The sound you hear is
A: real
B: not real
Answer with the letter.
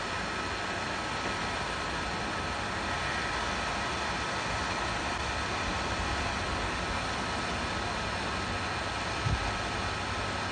A